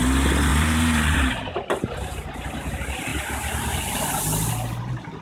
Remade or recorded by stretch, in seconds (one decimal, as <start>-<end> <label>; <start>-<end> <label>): 0.0-0.5 recorded; 0.5-2.3 remade; 2.3-5.2 recorded